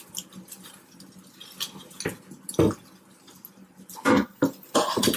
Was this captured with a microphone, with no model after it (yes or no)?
yes